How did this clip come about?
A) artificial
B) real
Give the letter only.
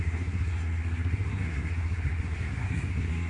A